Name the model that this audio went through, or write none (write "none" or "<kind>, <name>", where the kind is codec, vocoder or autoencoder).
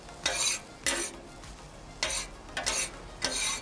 none